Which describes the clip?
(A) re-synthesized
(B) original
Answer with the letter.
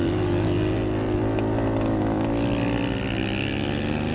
B